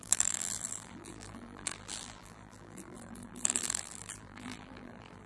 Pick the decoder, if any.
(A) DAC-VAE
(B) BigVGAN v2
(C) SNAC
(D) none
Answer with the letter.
B